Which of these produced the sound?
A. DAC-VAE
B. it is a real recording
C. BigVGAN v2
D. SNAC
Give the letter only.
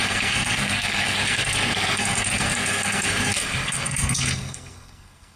D